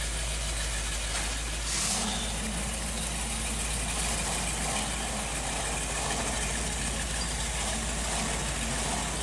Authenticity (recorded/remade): recorded